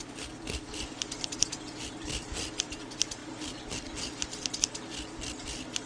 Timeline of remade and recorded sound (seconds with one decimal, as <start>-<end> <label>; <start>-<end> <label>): 0.0-5.9 recorded